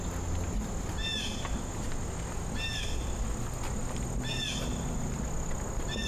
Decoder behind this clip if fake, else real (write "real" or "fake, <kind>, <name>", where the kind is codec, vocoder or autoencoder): real